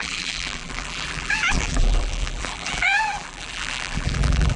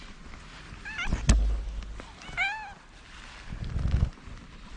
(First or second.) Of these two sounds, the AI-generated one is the first